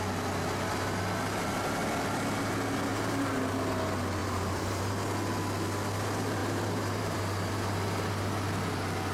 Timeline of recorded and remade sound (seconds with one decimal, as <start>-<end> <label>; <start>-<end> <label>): 0.0-2.9 recorded; 2.9-3.7 remade; 3.7-4.2 recorded; 4.2-4.9 remade; 4.9-6.4 recorded; 6.4-8.3 remade; 8.3-9.1 recorded